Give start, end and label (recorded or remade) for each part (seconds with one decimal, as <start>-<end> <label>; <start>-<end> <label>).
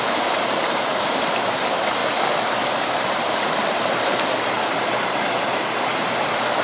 0.0-6.6 remade